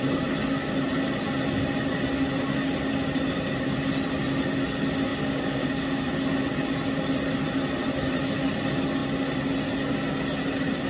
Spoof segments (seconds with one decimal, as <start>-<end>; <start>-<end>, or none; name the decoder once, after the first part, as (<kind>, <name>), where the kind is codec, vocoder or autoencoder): 5.1-6.0 (codec, DAC)